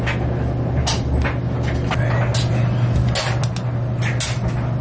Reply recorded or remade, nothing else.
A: recorded